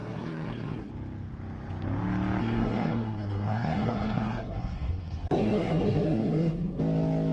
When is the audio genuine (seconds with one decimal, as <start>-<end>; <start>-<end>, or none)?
0.9-2.4; 6.8-7.3